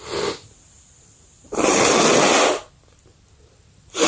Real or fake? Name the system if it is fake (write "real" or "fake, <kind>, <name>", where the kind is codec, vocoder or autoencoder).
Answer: real